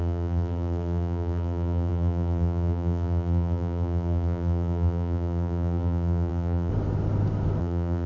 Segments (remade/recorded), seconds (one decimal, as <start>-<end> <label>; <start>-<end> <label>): 0.0-6.7 remade; 6.7-7.6 recorded; 7.6-8.1 remade